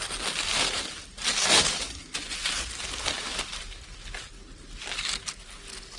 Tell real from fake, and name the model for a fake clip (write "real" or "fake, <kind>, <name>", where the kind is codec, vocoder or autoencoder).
real